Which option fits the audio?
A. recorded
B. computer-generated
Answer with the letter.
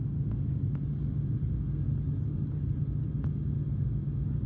A